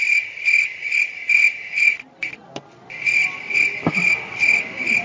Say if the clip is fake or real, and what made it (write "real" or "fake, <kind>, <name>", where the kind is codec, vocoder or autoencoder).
real